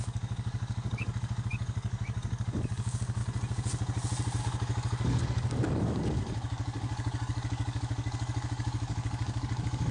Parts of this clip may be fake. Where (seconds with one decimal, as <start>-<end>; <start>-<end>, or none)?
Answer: 0.0-3.2; 4.4-9.9